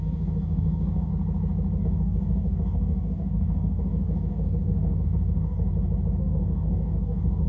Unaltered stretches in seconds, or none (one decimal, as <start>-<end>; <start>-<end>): 1.1-1.8; 5.7-6.2